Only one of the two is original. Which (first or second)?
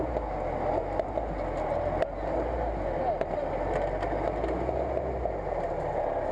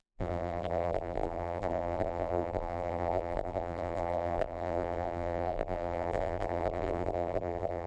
first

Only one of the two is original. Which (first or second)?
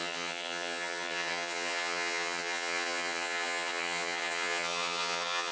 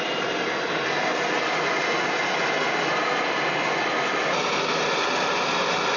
second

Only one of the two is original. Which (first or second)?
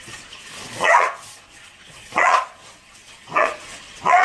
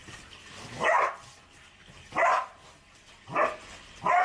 second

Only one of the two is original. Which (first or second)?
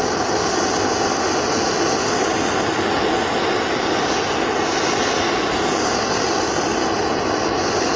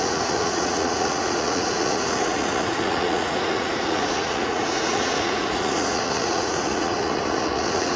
first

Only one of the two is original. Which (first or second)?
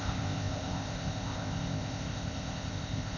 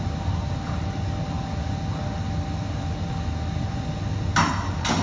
second